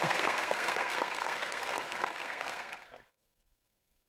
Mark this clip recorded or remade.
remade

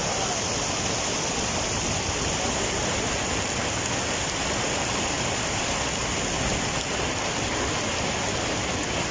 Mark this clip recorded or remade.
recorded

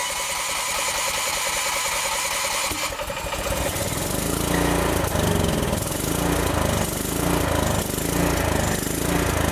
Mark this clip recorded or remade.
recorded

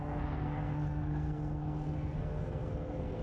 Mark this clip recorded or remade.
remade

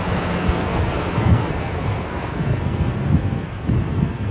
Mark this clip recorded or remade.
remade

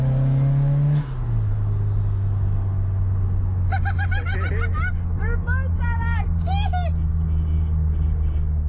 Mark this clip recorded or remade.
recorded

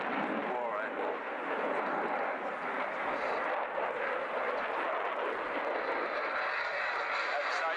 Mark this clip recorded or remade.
recorded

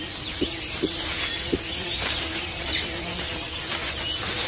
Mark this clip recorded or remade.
recorded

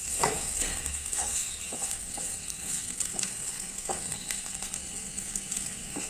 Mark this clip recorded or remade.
remade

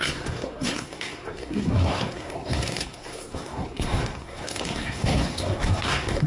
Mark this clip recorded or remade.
remade